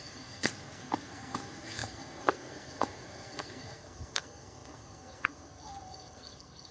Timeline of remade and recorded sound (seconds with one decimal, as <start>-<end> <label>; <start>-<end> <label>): 0.0-6.7 remade